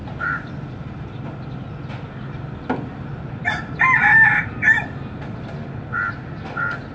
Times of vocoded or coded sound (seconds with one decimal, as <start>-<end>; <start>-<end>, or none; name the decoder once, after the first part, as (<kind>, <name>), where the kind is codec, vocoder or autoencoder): none